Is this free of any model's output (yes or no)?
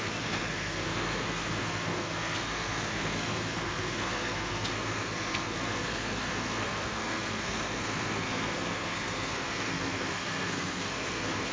no